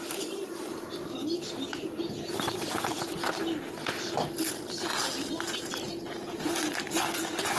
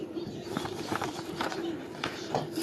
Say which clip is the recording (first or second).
first